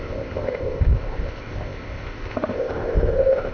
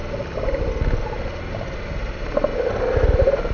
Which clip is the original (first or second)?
second